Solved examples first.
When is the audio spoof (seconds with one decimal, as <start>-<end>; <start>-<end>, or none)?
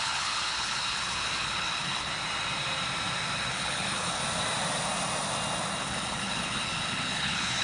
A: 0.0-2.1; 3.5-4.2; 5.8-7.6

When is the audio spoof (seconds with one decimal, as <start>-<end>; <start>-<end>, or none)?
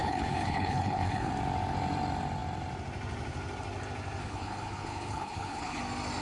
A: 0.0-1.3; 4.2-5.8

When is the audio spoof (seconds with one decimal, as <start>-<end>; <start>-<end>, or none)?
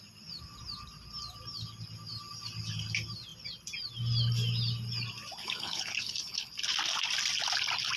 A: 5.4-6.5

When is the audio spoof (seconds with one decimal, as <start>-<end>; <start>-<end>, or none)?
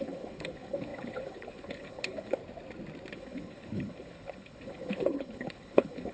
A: 0.0-2.4; 3.1-6.1